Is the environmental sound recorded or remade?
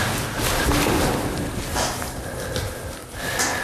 recorded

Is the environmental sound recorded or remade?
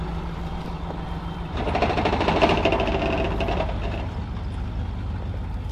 recorded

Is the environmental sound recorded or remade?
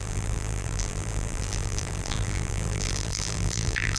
remade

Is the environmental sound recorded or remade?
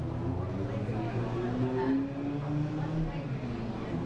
recorded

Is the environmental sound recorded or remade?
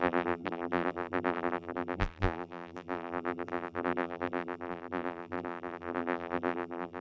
remade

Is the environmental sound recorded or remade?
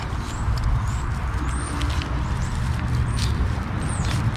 recorded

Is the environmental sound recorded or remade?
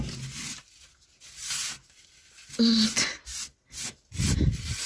recorded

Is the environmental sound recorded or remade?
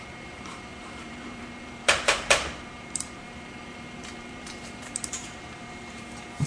remade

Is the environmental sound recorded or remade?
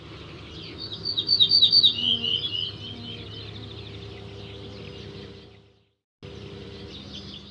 recorded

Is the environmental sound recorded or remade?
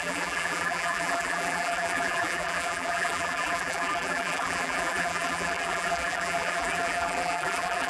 remade